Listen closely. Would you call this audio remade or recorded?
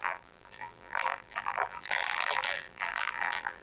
remade